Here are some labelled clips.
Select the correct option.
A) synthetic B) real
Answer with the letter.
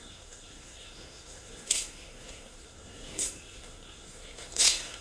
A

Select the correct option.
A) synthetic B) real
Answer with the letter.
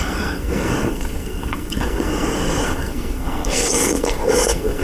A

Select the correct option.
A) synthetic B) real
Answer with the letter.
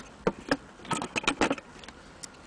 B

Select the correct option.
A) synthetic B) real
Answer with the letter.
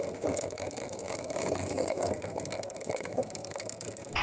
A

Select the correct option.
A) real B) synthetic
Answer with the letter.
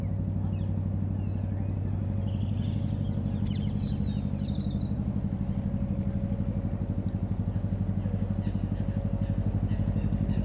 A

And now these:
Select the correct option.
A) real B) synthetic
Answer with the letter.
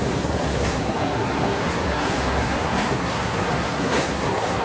B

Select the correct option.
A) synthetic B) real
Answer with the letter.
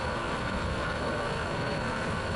A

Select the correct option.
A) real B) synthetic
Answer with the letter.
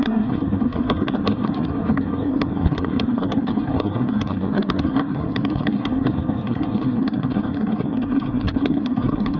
B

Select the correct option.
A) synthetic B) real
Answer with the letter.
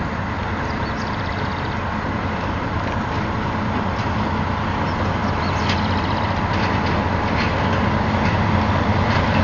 B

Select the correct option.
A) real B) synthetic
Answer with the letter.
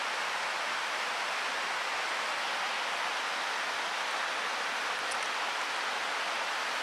A